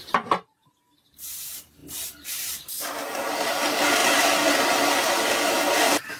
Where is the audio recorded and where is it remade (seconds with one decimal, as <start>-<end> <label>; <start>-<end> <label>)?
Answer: 0.0-4.0 remade; 4.0-5.5 recorded; 5.5-6.2 remade